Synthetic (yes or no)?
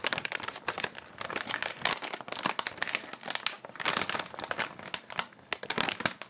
no